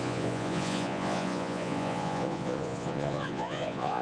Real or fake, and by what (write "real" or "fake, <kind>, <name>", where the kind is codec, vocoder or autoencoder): fake, vocoder, Vocos